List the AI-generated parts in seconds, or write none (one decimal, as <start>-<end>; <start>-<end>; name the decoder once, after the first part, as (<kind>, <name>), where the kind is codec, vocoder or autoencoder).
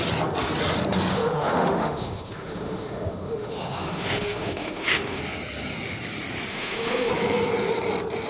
1.1-5.2 (autoencoder, DAC-VAE); 6.5-7.1